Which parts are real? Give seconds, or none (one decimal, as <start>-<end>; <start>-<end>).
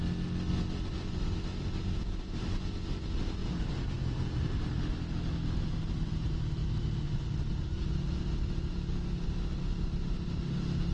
0.0-3.4; 4.7-10.9